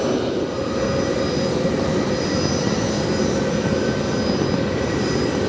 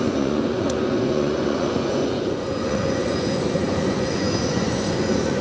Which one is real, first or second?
first